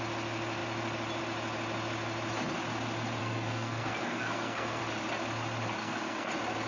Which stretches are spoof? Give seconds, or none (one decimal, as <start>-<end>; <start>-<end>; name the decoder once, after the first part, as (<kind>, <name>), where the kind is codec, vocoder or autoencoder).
3.2-4.8 (codec, SNAC); 5.8-6.3